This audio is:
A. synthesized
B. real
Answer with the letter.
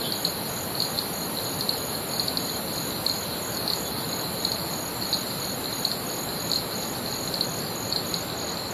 B